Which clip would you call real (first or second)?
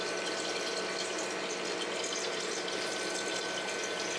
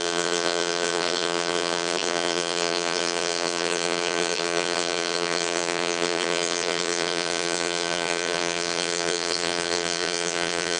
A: first